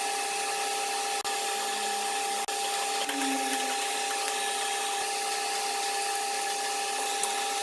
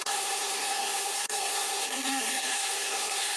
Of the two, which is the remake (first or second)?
second